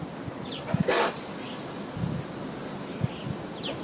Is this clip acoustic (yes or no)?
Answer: yes